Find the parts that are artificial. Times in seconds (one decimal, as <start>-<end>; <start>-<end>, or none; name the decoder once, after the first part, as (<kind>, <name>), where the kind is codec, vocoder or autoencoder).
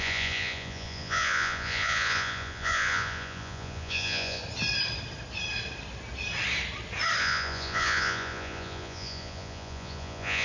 0.0-4.4 (vocoder, Vocos); 7.2-10.4